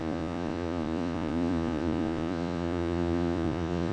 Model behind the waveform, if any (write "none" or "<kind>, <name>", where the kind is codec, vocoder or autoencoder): vocoder, Vocos